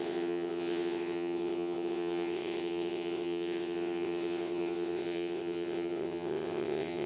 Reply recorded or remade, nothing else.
remade